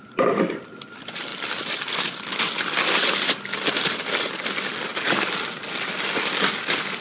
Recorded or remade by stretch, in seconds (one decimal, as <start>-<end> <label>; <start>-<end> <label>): 0.0-7.0 recorded